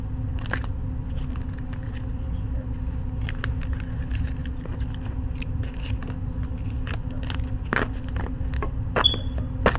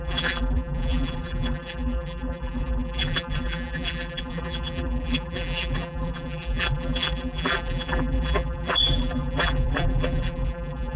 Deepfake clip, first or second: second